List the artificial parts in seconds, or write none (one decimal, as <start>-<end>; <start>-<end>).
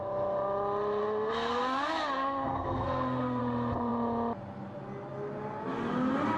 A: 1.0-3.4